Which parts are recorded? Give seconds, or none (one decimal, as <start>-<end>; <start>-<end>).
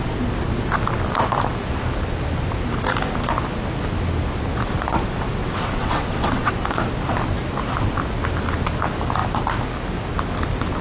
0.0-5.4; 6.5-10.8